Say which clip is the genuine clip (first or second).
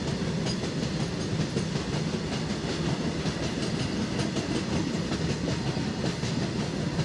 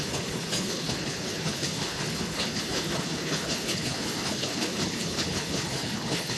first